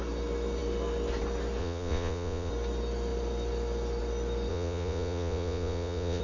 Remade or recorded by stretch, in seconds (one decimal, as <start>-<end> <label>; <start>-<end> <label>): 0.0-1.6 recorded; 1.6-2.5 remade; 2.5-4.5 recorded; 4.5-6.2 remade